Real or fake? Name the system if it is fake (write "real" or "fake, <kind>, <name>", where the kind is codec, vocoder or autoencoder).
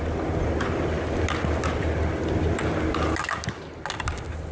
real